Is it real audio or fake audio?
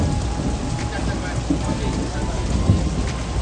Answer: real